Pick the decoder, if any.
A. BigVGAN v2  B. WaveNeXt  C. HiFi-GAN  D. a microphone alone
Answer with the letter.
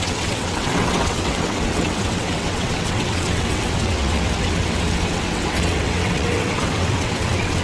B